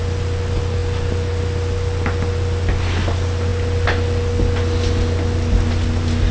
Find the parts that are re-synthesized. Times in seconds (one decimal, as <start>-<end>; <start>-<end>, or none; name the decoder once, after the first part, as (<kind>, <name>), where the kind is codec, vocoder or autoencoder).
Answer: none